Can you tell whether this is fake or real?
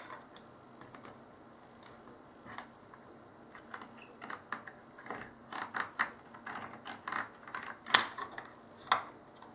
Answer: real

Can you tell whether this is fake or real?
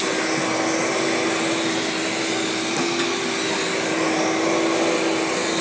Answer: real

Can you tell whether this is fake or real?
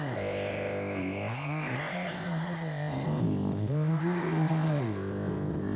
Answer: fake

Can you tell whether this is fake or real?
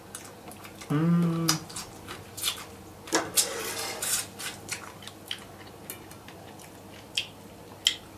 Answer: real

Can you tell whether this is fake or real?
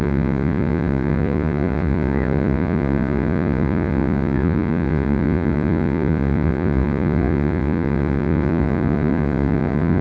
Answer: fake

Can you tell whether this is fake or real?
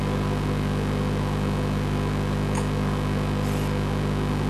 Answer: real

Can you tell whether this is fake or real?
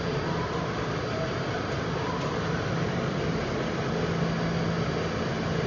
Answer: real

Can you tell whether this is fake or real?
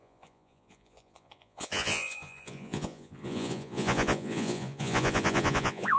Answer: fake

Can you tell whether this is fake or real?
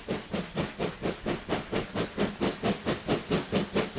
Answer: real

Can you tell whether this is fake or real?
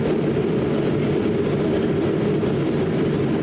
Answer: real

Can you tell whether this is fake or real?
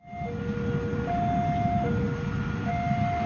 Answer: real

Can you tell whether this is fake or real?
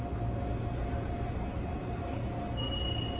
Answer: real